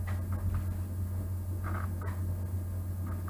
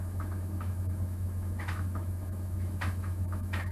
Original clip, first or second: first